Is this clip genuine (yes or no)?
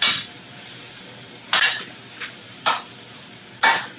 no